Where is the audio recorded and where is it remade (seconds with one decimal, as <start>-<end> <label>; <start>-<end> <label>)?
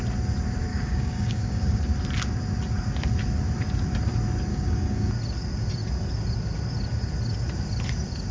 0.0-0.7 recorded; 0.7-1.8 remade; 1.8-4.5 recorded; 4.5-5.1 remade; 5.1-8.3 recorded